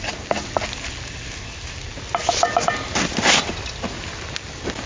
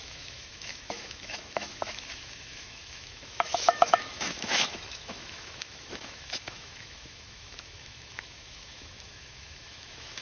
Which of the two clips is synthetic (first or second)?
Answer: second